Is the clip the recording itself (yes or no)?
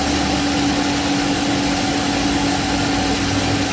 yes